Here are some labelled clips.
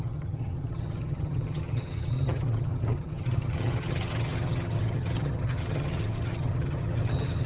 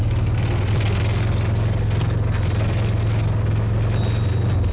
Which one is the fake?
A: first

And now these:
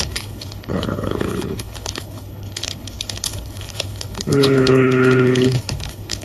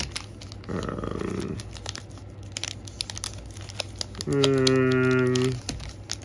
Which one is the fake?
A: first